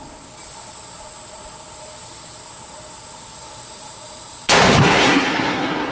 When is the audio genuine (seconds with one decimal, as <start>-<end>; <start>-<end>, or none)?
0.0-4.8